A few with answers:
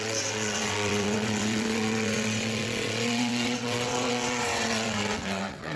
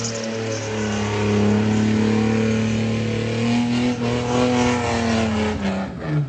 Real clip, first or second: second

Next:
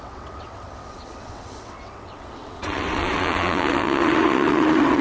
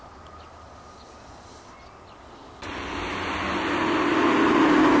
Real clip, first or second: second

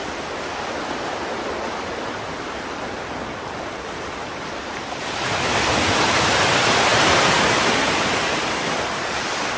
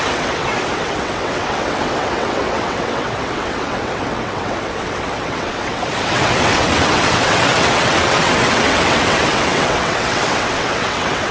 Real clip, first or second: first